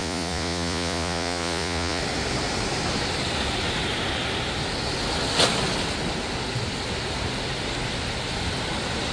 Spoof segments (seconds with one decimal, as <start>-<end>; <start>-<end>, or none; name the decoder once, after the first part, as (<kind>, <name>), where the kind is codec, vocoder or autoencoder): 0.0-2.0 (vocoder, Vocos)

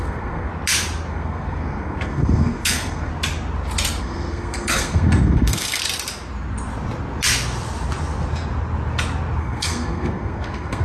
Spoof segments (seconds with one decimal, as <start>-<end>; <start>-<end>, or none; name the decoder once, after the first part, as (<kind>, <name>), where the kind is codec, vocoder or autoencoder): 0.0-0.5 (codec, SNAC); 1.1-3.1; 4.0-5.8; 9.4-10.8

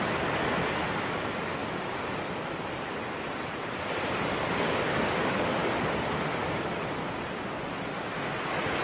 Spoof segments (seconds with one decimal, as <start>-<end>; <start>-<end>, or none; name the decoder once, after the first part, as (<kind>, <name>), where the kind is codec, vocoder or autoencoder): 1.6-4.8 (vocoder, BigVGAN v2); 5.6-7.5

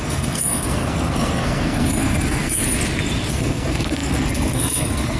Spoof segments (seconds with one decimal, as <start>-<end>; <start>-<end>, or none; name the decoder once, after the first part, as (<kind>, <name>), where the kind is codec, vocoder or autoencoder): 0.0-2.6 (codec, SNAC); 3.3-5.2

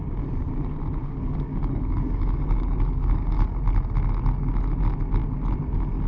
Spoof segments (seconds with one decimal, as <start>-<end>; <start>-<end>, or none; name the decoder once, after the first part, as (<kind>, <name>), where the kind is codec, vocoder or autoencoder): 1.0-3.6 (codec, DAC)